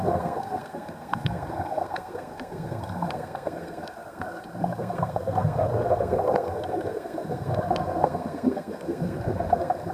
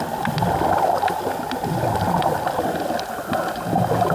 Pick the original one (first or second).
second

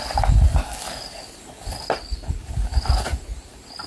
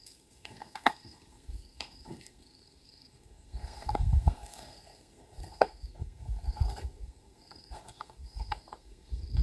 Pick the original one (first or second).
first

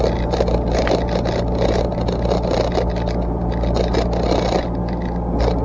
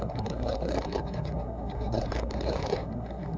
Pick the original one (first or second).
first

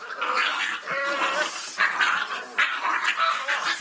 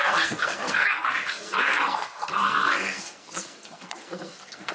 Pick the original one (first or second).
first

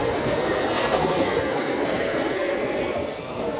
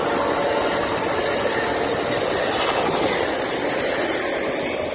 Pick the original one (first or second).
second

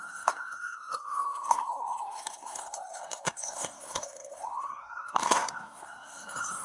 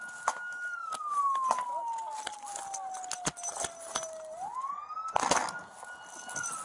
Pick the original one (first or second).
second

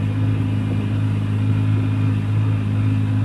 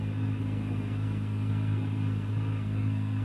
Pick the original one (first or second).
first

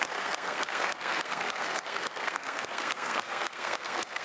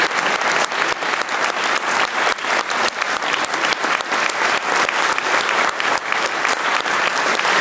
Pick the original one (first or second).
second